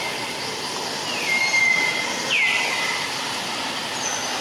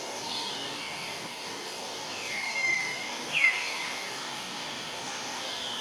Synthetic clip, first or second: second